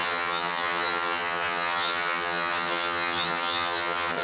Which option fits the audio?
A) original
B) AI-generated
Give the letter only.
B